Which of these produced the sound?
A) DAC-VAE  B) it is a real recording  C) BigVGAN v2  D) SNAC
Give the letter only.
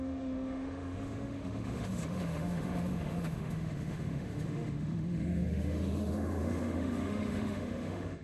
A